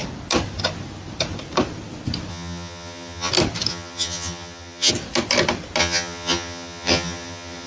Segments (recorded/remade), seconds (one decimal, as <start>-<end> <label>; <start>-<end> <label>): 0.0-2.3 recorded; 2.3-3.3 remade; 3.3-3.7 recorded; 3.7-4.9 remade; 4.9-5.8 recorded; 5.8-7.7 remade